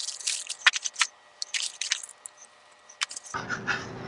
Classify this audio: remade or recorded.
recorded